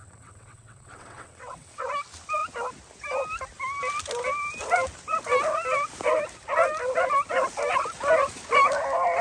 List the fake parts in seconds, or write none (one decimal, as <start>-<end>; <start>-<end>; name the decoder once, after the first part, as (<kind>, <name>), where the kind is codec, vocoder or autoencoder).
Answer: 0.0-1.9 (vocoder, WaveNeXt)